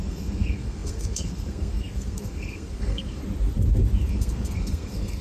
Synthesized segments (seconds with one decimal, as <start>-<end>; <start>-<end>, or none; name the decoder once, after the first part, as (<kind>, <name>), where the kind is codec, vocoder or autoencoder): 0.0-3.2 (codec, SNAC); 4.1-5.2